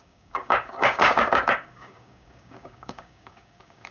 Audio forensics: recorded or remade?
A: remade